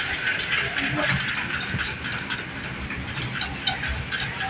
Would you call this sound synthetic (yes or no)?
no